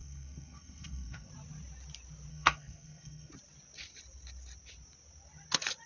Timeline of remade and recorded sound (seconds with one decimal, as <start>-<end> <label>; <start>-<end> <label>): 0.0-1.3 remade; 1.3-2.3 recorded; 2.3-3.3 remade; 3.3-5.9 recorded